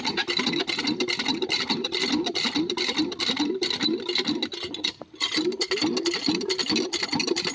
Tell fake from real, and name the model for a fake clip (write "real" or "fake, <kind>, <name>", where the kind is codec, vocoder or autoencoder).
real